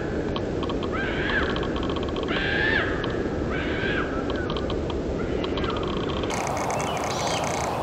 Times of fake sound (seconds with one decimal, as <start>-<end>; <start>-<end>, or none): 2.4-3.3; 5.1-5.7